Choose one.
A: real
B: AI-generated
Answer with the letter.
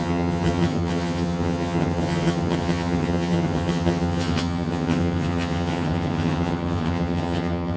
B